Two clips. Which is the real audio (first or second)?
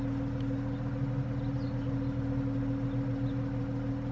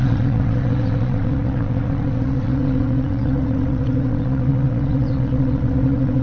first